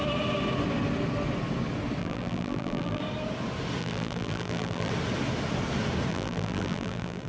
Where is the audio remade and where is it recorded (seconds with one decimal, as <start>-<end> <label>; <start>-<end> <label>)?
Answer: 0.0-2.0 recorded; 2.0-3.0 remade; 3.0-3.8 recorded; 3.8-4.9 remade; 4.9-6.1 recorded; 6.1-7.3 remade